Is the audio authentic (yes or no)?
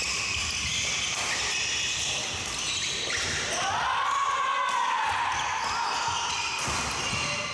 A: yes